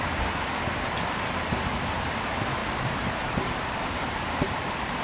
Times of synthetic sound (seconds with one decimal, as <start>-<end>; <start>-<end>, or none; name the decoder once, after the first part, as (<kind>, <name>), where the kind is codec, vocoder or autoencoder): 2.6-3.7 (vocoder, BigVGAN v2)